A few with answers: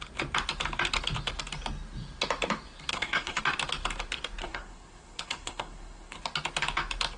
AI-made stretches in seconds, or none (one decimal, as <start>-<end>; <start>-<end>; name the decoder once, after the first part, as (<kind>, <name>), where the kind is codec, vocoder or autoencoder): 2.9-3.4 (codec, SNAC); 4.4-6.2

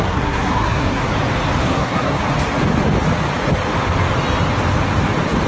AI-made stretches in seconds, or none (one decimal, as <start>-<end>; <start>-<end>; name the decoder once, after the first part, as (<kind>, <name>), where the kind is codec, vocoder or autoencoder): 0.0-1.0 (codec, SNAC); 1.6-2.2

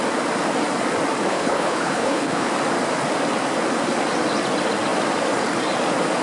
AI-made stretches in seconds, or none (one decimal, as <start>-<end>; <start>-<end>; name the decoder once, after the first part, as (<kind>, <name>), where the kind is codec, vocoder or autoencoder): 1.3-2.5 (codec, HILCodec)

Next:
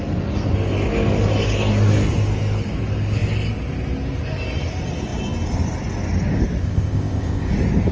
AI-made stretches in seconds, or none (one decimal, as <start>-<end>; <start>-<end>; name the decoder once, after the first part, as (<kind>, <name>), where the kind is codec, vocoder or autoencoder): 6.6-7.5 (codec, ZipCodec)